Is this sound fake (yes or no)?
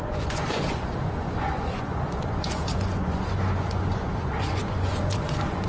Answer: yes